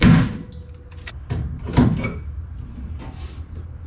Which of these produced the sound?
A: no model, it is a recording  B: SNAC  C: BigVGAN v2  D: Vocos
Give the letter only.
A